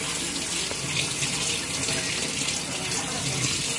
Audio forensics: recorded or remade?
recorded